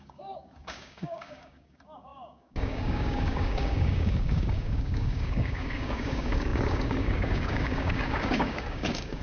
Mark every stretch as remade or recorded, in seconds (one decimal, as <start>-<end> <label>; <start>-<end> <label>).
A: 0.0-9.2 remade